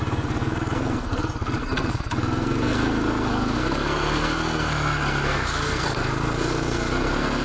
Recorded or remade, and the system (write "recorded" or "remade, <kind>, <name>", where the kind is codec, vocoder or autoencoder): remade, codec, SNAC